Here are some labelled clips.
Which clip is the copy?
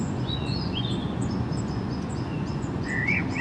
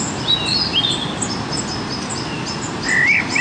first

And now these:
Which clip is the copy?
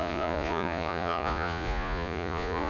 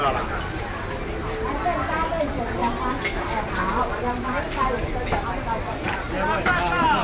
first